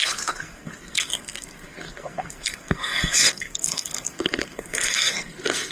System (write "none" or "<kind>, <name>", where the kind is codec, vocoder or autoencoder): codec, SNAC